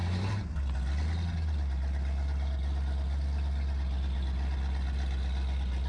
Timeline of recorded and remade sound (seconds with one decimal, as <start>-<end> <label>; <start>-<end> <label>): 0.0-5.9 recorded